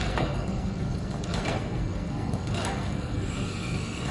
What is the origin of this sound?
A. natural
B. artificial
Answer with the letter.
B